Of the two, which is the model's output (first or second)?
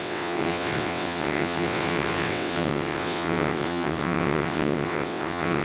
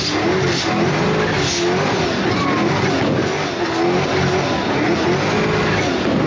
first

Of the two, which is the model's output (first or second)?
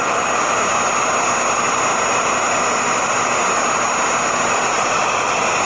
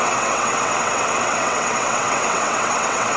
second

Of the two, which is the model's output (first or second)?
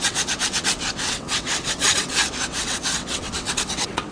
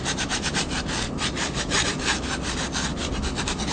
first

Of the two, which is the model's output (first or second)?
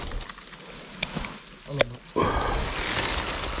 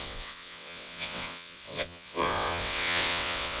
second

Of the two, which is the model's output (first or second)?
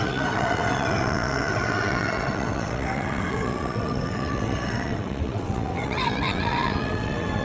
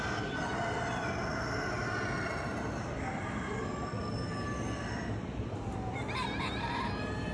first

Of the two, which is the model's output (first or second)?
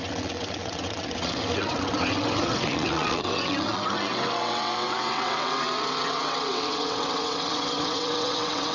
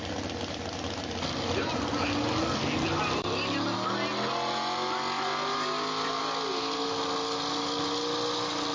first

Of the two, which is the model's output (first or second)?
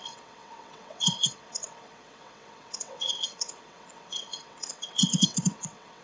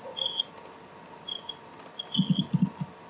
first